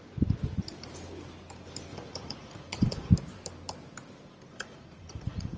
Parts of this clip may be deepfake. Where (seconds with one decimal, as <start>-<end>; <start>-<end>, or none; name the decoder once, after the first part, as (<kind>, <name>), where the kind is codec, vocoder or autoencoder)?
1.9-3.1 (vocoder, Vocos); 4.5-5.6